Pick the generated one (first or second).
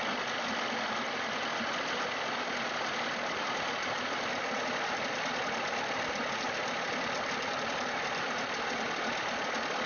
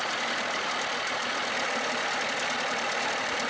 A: first